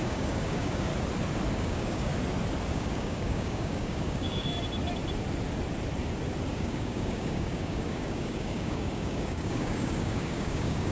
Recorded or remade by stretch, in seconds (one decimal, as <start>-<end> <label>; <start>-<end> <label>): 0.0-0.9 remade; 0.9-1.5 recorded; 1.5-2.1 remade; 2.1-2.7 recorded; 2.7-4.5 remade; 4.5-6.5 recorded; 6.5-10.9 remade